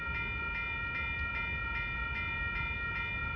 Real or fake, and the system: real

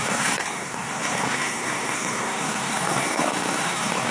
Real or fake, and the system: fake, codec, SNAC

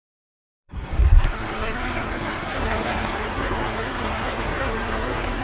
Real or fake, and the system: fake, codec, SNAC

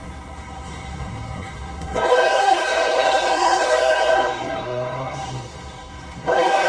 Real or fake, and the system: fake, codec, SNAC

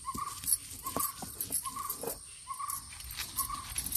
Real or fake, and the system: real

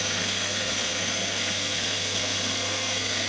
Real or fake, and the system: fake, codec, SNAC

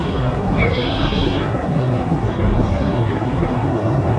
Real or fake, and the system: fake, codec, SNAC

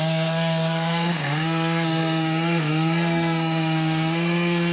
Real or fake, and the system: fake, codec, SNAC